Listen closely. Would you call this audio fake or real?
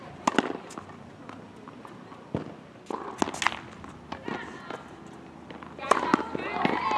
real